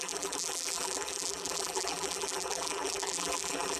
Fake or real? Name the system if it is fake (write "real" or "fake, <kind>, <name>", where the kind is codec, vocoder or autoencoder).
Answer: fake, vocoder, BigVGAN v2